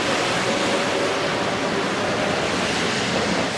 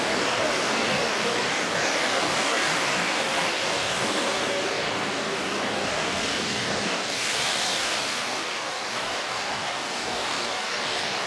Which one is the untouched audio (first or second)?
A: first